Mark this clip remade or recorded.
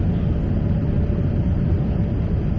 recorded